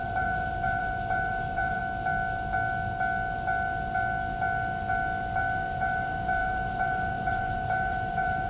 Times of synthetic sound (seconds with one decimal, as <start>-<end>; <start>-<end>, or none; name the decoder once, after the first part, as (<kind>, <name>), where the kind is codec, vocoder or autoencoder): 0.0-1.8 (vocoder, BigVGAN v2); 5.4-8.5